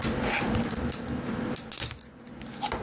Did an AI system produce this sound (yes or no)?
no